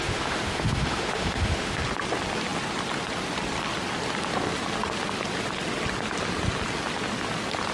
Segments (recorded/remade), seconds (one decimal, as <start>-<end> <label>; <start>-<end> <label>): 0.0-1.8 remade; 1.8-7.7 recorded